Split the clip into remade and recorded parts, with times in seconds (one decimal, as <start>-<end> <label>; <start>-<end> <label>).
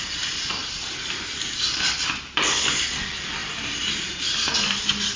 0.0-0.6 recorded; 0.6-1.6 remade; 1.6-3.4 recorded; 3.4-4.4 remade; 4.4-5.2 recorded